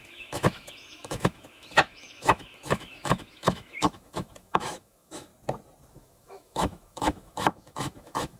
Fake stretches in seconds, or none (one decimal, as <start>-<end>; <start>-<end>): 0.0-5.3; 5.9-8.4

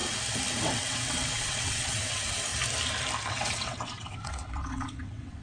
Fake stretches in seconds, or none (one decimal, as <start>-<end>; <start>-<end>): 0.6-2.5; 3.3-5.4

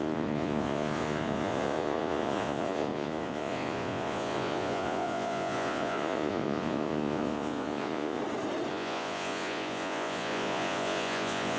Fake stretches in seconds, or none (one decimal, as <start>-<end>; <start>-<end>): 0.0-8.2; 8.7-11.6

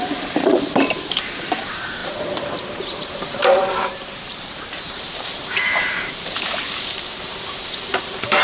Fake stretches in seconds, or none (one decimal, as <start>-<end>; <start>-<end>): 0.0-8.4